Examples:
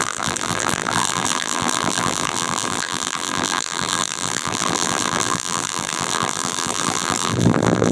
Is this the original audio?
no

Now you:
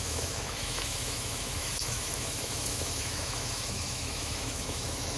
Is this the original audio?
no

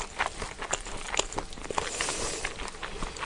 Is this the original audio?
yes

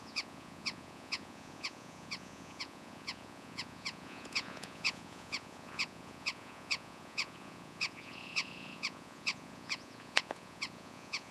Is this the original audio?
no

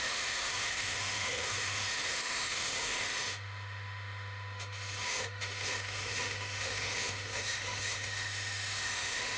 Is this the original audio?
no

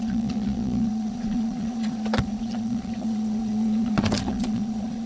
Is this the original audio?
no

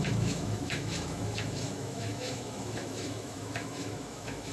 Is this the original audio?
no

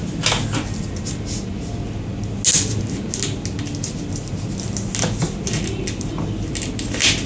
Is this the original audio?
yes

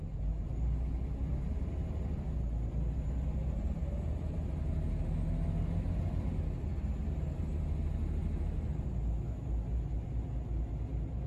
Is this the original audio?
yes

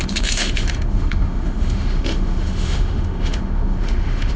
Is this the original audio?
no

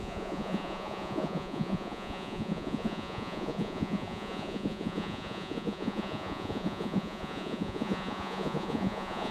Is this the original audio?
no